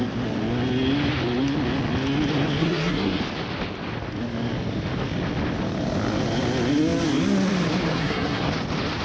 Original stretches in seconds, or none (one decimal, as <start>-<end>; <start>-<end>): 0.0-2.6; 3.2-7.9; 8.5-9.0